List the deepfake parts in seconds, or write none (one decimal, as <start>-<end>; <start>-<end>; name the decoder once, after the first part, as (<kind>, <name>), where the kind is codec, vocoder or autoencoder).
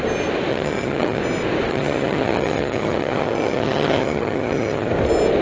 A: 0.5-1.2 (vocoder, HiFi-GAN); 1.7-4.9